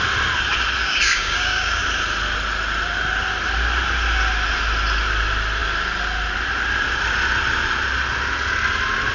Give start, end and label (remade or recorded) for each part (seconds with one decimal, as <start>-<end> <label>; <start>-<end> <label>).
0.0-0.8 recorded; 0.8-1.8 remade; 1.8-9.1 recorded